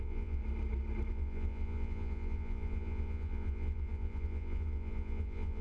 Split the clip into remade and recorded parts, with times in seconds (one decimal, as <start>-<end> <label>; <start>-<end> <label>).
0.0-0.4 remade; 0.4-1.1 recorded; 1.1-5.6 remade